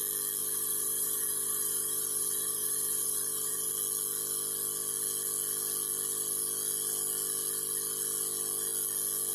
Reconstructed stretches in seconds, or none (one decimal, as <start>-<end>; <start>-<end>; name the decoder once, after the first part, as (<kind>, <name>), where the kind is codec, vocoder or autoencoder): 0.4-3.7 (vocoder, BigVGAN v2)